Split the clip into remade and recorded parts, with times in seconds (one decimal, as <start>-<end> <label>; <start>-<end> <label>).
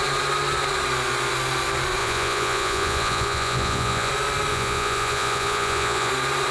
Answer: 0.0-2.0 recorded; 2.0-4.1 remade; 4.1-4.5 recorded; 4.5-6.1 remade; 6.1-6.5 recorded